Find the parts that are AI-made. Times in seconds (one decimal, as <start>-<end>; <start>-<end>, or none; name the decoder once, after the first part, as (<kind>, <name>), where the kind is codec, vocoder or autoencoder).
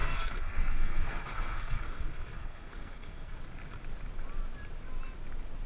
0.0-3.4 (codec, SNAC)